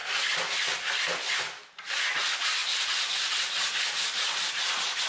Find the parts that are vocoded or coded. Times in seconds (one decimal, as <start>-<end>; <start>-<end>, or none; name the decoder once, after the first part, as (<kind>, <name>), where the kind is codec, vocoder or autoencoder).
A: none